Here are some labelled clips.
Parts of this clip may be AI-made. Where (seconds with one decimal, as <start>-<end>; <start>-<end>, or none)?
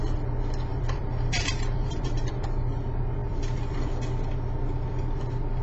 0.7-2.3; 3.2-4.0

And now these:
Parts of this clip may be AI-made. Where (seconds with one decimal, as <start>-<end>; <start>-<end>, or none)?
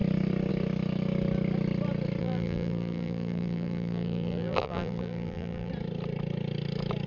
2.2-5.7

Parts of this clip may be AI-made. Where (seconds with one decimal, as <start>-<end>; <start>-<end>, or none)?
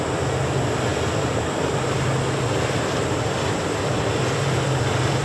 0.0-5.2